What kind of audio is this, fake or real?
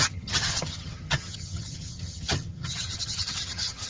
fake